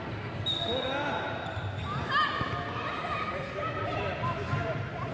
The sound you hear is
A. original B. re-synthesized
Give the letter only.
A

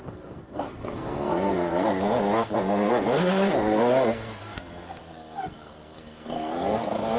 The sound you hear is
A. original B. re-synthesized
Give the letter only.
B